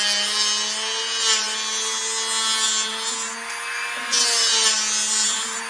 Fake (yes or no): no